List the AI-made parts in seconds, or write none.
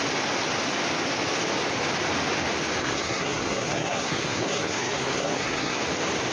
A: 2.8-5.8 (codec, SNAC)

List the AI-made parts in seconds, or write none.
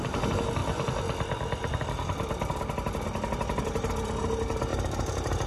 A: 4.7-5.5 (vocoder, BigVGAN v2)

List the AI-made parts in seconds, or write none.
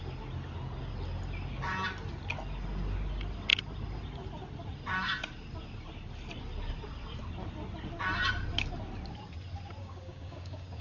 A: 9.8-10.8 (codec, DAC)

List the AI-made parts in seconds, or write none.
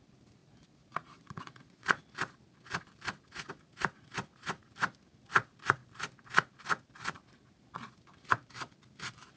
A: 0.4-2.0 (vocoder, Vocos)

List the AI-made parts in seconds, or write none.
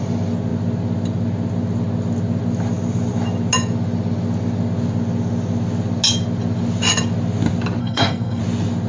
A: 7.8-8.4 (codec, SNAC)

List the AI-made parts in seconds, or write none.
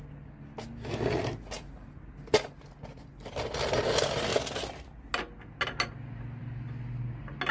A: none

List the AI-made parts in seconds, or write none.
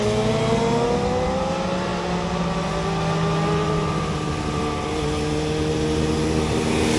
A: none